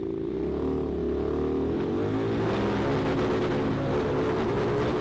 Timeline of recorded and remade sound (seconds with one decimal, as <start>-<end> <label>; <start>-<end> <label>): 0.0-5.0 recorded